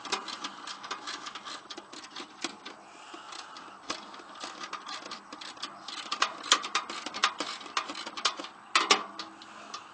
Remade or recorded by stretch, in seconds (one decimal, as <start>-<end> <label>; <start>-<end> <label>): 0.0-9.9 recorded